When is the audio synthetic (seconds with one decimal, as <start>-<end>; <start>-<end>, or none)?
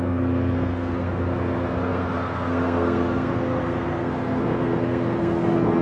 0.0-5.8